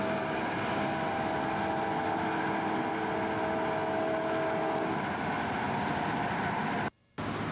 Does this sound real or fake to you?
real